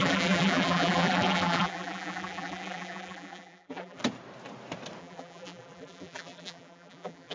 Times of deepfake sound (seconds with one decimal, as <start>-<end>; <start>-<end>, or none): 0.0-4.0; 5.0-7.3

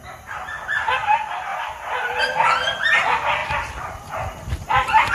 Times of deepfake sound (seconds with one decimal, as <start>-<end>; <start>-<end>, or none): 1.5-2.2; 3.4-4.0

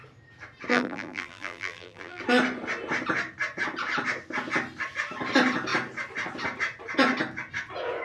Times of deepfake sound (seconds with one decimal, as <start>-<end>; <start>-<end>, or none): 0.7-2.2